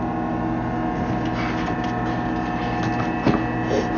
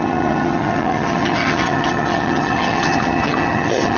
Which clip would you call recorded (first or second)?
first